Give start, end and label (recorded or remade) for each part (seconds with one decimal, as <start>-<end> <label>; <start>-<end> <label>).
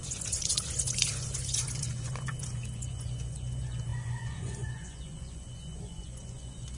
0.0-6.8 remade